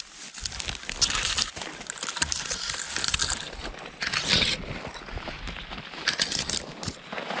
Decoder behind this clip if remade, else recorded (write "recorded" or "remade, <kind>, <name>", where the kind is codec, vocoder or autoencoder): recorded